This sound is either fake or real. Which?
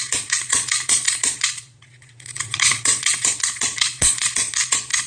fake